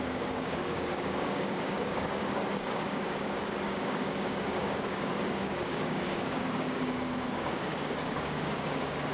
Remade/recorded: remade